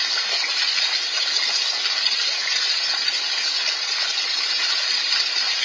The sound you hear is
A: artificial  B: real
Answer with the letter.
B